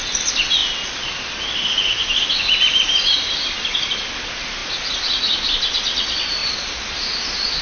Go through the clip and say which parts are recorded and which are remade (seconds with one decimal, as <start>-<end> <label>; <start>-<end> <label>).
0.0-7.6 recorded